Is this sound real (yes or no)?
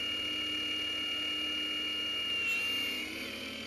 yes